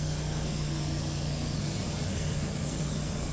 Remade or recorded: remade